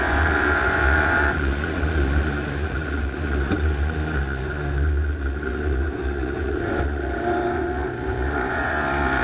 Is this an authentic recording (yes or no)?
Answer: no